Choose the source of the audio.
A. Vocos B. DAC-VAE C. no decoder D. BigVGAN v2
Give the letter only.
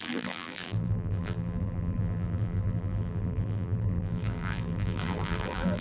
D